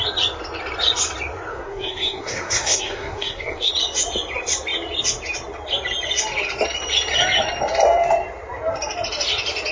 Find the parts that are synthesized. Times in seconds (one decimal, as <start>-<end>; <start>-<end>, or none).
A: 1.5-3.7